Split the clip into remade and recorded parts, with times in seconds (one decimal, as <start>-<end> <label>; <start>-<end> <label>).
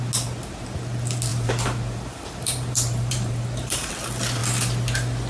0.0-1.3 recorded; 1.3-3.9 remade; 3.9-5.3 recorded